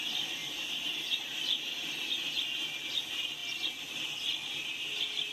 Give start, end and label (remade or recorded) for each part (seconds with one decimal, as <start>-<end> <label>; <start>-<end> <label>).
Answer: 0.0-5.3 recorded